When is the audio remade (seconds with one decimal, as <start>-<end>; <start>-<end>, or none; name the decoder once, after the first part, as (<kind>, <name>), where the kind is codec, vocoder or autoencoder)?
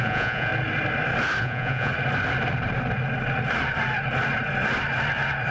0.0-0.5 (vocoder, Vocos); 1.4-1.9